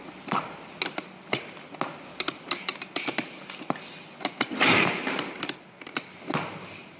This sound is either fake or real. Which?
real